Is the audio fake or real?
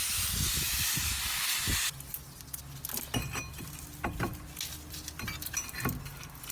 real